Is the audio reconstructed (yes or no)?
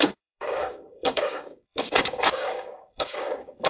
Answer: yes